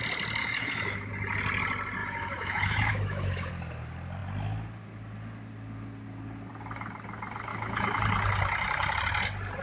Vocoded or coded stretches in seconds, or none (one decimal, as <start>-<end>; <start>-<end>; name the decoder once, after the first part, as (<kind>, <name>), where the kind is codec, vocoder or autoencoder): 0.4-1.1 (autoencoder, DAC-VAE); 2.0-3.5; 7.5-8.0